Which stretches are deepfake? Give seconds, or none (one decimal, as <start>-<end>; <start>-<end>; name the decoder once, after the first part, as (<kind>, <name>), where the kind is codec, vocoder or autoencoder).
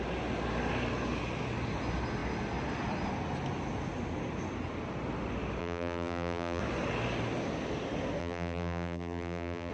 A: 5.6-6.6 (vocoder, BigVGAN v2); 8.2-9.7